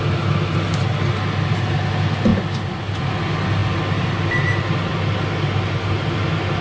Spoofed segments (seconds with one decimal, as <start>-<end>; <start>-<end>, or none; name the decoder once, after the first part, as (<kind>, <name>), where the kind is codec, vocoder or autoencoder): none